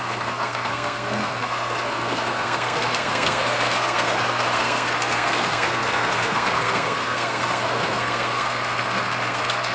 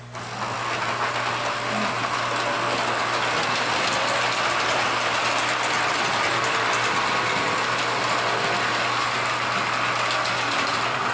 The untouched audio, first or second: second